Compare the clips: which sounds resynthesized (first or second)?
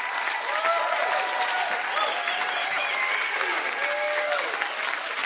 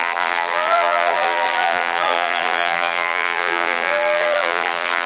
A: second